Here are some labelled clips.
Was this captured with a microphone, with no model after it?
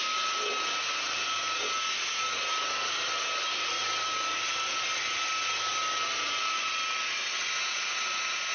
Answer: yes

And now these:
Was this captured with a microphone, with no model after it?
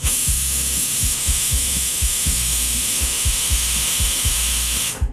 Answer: no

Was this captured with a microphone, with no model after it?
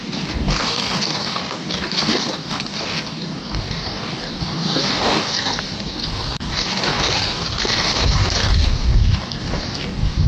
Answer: no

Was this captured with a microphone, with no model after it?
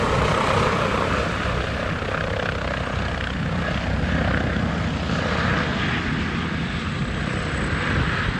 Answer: yes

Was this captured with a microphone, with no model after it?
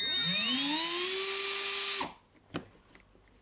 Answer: yes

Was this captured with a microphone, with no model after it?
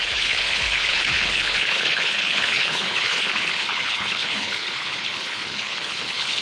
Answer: no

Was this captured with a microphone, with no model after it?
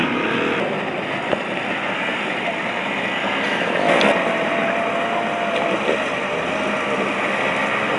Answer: yes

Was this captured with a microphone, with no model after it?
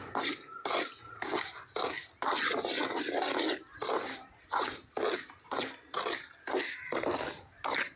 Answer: yes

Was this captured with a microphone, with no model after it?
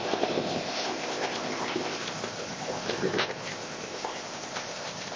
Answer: no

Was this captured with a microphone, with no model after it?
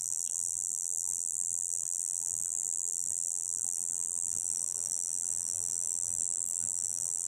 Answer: no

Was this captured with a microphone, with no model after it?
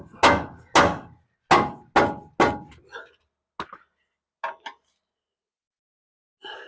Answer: yes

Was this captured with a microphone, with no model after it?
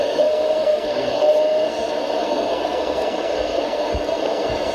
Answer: no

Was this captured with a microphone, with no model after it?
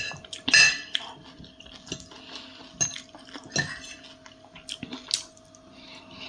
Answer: yes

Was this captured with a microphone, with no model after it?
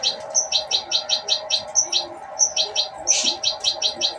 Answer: yes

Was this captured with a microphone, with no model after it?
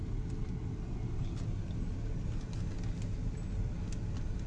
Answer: yes